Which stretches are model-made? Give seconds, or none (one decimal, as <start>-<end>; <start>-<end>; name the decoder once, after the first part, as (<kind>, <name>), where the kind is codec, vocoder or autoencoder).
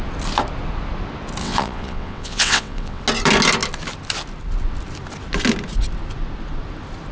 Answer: 1.4-3.0 (vocoder, WaveNeXt)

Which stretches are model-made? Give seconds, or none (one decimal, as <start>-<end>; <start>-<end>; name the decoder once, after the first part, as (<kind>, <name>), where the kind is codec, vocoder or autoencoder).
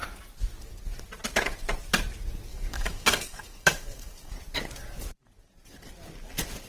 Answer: 2.5-4.3 (codec, DAC)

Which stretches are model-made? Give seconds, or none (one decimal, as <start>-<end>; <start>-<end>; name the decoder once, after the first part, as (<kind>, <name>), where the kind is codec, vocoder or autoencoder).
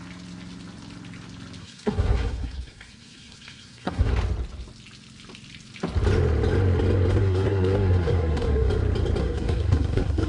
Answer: 1.6-4.1 (codec, SNAC); 7.1-8.7; 9.2-10.3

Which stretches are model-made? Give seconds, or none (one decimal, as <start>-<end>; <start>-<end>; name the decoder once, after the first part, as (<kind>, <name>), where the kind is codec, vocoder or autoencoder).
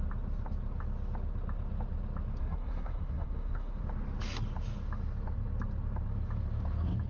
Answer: 2.4-3.8 (codec, SNAC)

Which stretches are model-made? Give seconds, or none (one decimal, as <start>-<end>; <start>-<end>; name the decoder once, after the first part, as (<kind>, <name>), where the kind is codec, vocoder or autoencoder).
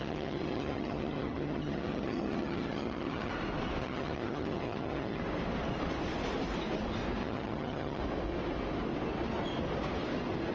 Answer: 0.0-3.3 (vocoder, HiFi-GAN); 3.8-5.2; 7.2-8.0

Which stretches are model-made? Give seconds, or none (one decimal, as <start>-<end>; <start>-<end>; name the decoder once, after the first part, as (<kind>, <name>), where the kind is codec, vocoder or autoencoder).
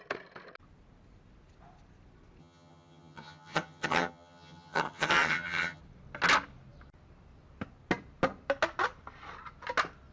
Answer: 2.4-5.8 (vocoder, HiFi-GAN)